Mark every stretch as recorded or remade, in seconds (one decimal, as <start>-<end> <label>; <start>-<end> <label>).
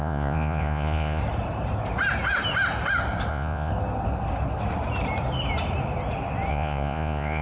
0.0-1.2 remade; 1.2-3.3 recorded; 3.3-3.7 remade; 3.7-6.5 recorded; 6.5-7.4 remade